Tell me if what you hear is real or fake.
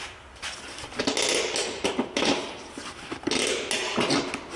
real